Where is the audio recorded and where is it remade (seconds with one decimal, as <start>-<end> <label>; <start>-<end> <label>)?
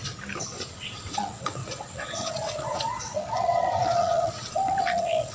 0.0-0.7 recorded; 0.7-5.3 remade